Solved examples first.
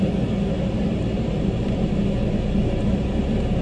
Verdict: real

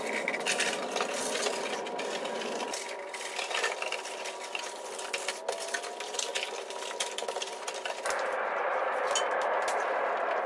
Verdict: real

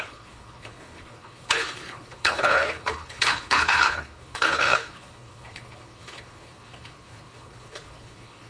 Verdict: fake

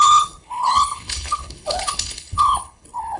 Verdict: fake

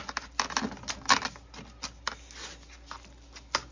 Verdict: real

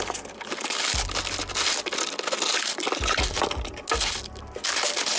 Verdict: real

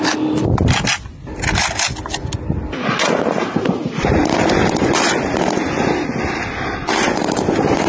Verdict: real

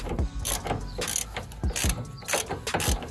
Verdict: real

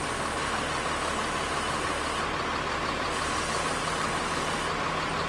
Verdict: real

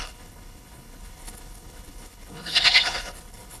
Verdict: fake